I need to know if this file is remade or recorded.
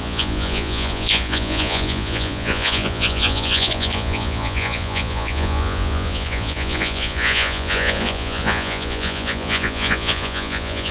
remade